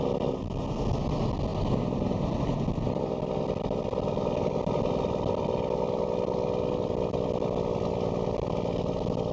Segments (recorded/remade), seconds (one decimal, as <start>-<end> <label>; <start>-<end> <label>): 0.0-9.3 recorded